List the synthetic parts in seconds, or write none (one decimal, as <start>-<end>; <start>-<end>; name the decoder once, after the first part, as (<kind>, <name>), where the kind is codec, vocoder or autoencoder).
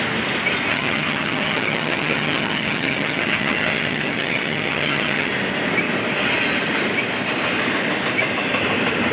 0.7-5.3 (vocoder, HiFi-GAN)